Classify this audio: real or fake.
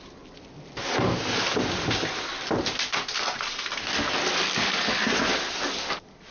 real